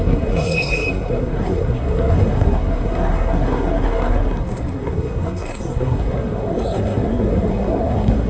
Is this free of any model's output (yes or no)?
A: no